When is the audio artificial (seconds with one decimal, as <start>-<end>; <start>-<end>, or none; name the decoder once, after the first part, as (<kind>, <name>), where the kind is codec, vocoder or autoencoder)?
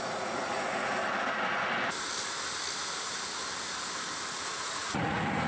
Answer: 0.0-1.0 (vocoder, Vocos); 4.3-5.5